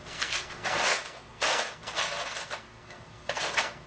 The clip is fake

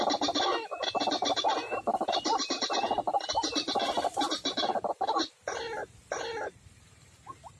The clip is real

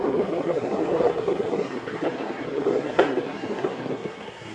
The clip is fake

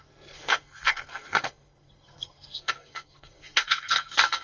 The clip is fake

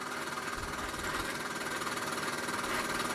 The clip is real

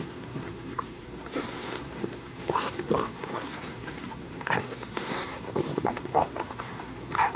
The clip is fake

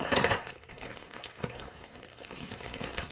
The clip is fake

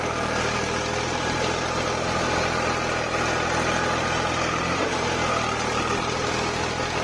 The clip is real